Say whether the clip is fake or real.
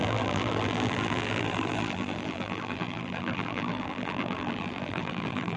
fake